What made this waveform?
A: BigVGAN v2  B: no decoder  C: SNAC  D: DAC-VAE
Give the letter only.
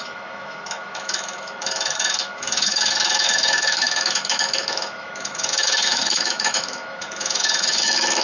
D